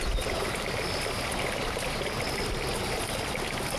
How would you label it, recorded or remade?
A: recorded